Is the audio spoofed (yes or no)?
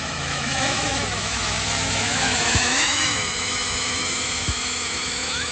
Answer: yes